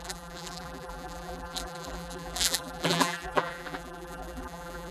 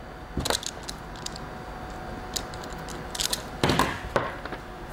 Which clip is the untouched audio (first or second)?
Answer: second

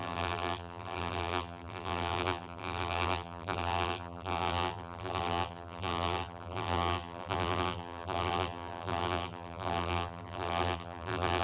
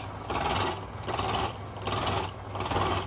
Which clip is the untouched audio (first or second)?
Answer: second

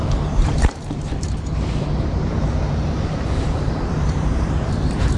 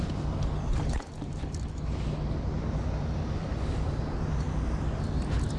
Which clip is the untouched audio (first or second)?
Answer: second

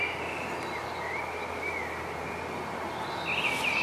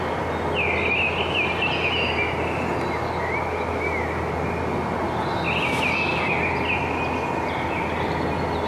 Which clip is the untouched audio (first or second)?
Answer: second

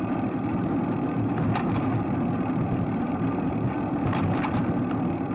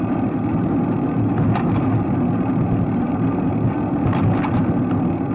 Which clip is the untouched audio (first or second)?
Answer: second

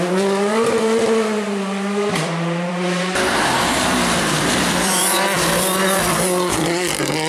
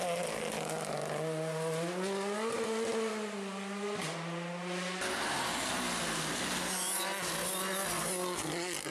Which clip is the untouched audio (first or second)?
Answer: second